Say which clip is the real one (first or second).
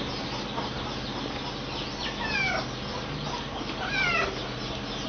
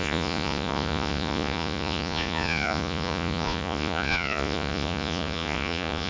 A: first